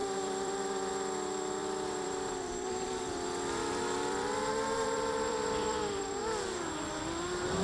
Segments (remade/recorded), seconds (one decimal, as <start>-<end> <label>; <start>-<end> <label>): 0.0-0.9 remade; 0.9-1.6 recorded; 1.6-6.2 remade; 6.2-7.6 recorded